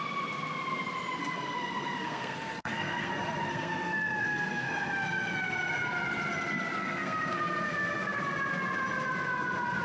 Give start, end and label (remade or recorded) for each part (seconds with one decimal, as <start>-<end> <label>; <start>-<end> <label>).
0.0-1.2 recorded; 1.2-3.1 remade; 3.1-3.5 recorded; 3.5-5.7 remade; 5.7-6.8 recorded; 6.8-8.2 remade; 8.2-9.8 recorded